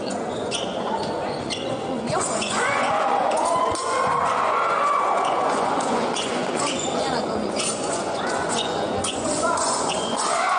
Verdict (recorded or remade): remade